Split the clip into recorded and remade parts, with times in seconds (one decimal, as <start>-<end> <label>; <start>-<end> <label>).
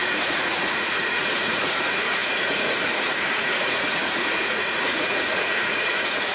0.0-6.3 remade